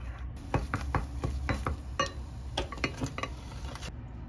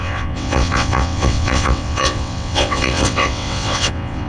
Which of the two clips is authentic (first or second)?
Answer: first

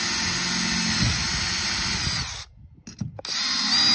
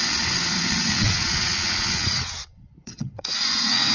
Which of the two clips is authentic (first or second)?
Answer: first